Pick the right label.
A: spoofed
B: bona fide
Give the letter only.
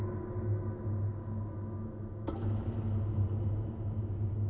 B